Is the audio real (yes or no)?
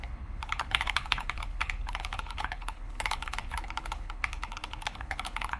no